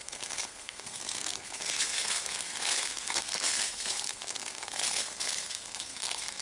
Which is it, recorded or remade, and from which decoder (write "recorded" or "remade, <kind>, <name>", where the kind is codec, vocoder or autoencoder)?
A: remade, codec, SNAC